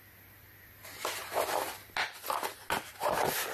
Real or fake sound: real